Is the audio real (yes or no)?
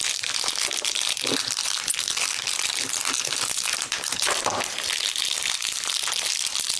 yes